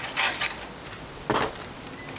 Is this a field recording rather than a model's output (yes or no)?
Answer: yes